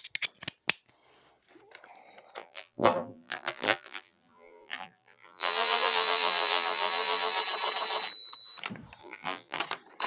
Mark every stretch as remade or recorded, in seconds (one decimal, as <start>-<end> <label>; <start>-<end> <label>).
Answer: 0.0-2.4 recorded; 2.4-7.4 remade; 7.4-9.0 recorded; 9.0-9.6 remade; 9.6-10.1 recorded